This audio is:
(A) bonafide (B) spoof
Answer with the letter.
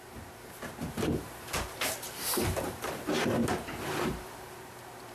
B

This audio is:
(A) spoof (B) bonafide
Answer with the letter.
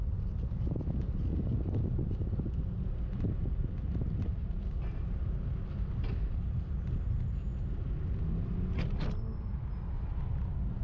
B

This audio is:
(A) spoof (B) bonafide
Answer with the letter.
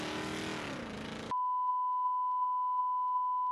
B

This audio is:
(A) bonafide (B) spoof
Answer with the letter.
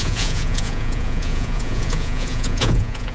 B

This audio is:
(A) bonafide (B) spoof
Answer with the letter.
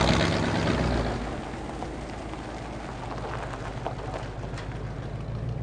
A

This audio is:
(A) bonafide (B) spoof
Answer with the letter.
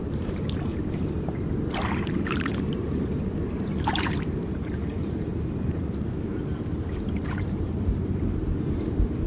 B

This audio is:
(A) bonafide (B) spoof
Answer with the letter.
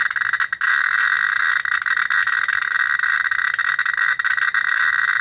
A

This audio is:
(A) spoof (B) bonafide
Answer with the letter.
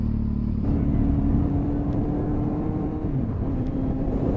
A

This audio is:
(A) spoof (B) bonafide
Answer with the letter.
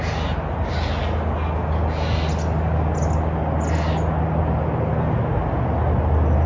B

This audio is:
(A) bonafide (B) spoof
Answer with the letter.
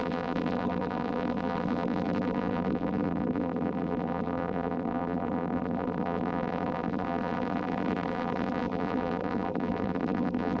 B